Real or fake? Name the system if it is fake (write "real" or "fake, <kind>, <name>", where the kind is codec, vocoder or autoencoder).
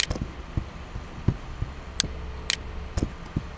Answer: real